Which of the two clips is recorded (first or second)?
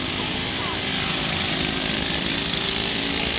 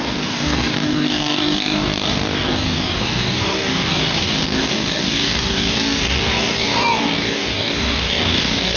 first